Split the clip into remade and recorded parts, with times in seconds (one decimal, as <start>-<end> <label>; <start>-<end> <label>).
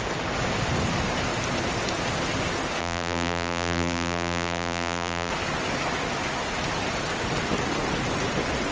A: 0.0-2.8 recorded; 2.8-5.3 remade; 5.3-8.7 recorded